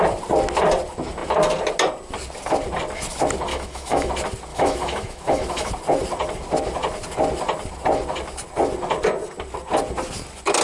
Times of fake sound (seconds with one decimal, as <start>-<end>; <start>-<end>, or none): 3.5-4.1; 4.5-5.7